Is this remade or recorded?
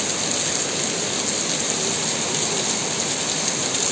recorded